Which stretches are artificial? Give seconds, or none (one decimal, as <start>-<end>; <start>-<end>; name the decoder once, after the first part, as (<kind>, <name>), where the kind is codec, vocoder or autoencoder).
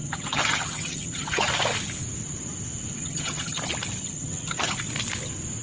0.0-1.5 (vocoder, HiFi-GAN); 3.0-3.6; 4.0-4.8